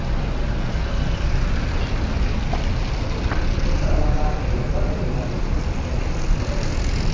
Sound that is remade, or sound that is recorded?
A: recorded